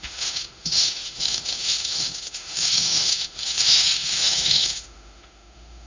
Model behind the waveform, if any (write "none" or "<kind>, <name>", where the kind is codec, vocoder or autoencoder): autoencoder, DAC-VAE